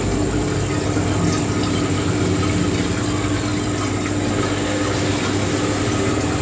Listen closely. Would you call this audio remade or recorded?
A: recorded